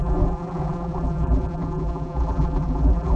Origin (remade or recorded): remade